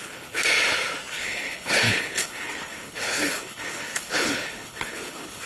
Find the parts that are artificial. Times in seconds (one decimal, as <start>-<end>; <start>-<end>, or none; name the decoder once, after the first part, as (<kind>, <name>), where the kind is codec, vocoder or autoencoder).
0.0-0.4 (codec, HILCodec); 1.1-5.5